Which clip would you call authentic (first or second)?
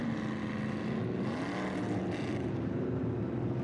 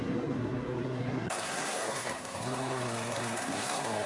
first